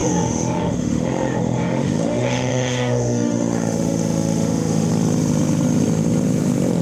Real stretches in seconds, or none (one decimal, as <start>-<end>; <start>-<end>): 4.9-6.8